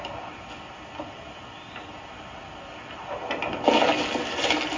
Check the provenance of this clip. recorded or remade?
recorded